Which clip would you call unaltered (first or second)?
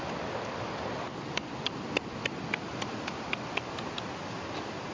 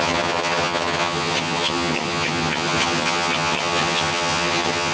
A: first